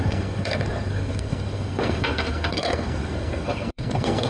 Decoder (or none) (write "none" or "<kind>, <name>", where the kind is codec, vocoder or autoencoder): codec, SNAC